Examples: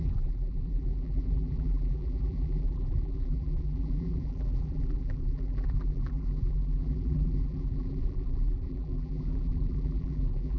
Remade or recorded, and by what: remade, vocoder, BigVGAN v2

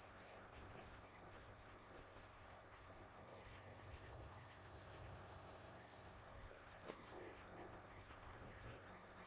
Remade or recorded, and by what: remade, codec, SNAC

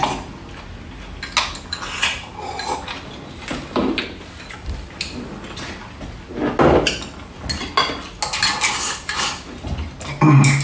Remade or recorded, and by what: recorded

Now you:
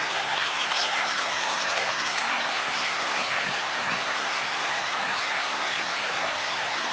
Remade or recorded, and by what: remade, codec, SNAC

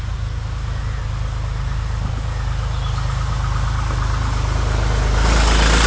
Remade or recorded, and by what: recorded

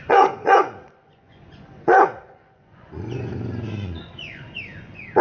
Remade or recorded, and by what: remade, vocoder, Vocos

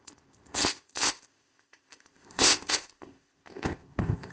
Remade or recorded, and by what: remade, codec, ZipCodec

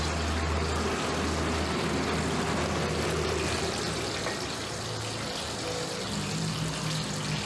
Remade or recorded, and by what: recorded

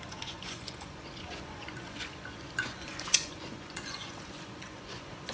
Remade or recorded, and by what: remade, vocoder, Vocos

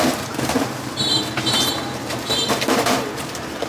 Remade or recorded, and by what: remade, vocoder, BigVGAN v2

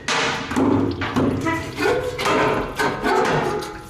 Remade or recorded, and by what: recorded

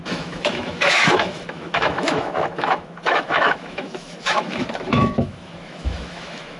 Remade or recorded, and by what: remade, autoencoder, DAC-VAE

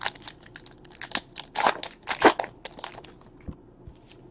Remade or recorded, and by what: recorded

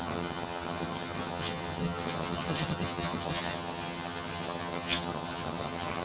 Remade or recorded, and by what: remade, vocoder, HiFi-GAN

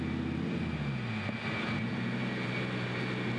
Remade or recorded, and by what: recorded